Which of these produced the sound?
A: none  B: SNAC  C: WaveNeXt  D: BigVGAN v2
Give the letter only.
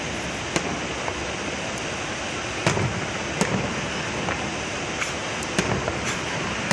A